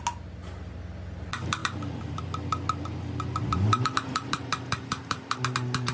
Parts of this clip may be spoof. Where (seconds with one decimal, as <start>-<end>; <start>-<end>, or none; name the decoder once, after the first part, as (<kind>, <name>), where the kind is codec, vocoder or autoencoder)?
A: 1.6-2.2 (vocoder, BigVGAN v2); 4.1-5.9